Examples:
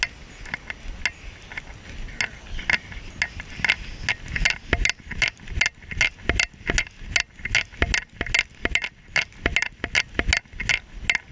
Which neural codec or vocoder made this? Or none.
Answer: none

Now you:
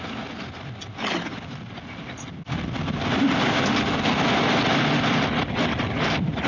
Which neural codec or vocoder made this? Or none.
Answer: none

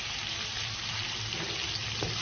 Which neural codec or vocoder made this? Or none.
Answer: none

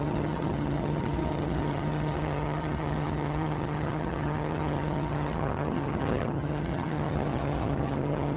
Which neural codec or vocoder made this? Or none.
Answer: vocoder, HiFi-GAN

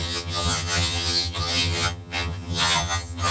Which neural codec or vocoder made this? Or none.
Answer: vocoder, HiFi-GAN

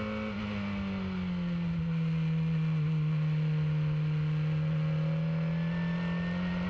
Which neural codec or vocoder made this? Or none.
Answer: none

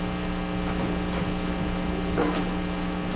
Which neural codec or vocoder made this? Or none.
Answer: none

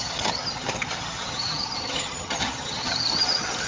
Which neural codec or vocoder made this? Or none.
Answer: vocoder, HiFi-GAN